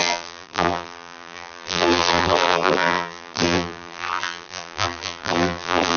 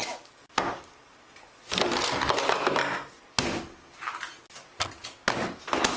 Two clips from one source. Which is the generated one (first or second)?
first